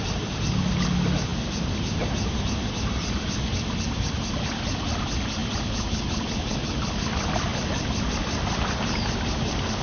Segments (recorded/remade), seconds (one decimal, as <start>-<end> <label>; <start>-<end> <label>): 0.0-9.8 recorded